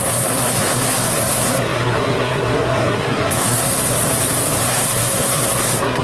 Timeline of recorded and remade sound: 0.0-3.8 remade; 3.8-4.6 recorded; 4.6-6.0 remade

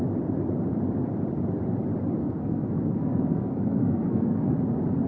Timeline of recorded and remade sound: 0.0-2.2 recorded; 2.2-4.5 remade; 4.5-5.1 recorded

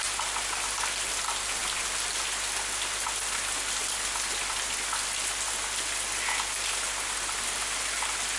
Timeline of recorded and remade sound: 0.0-8.4 recorded

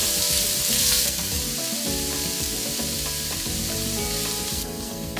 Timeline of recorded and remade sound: 0.0-0.8 recorded; 0.8-1.4 remade; 1.4-4.5 recorded; 4.5-5.2 remade

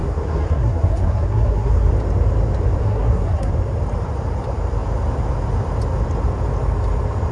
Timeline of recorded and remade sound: 0.0-1.9 remade; 1.9-2.8 recorded; 2.8-3.5 remade; 3.5-7.3 recorded

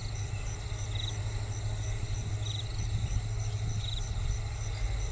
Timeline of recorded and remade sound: 0.0-5.1 recorded

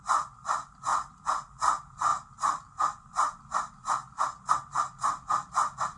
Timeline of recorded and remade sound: 0.0-6.0 recorded

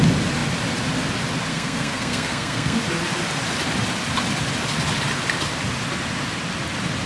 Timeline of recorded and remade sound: 0.0-1.5 recorded; 1.5-2.8 remade; 2.8-7.1 recorded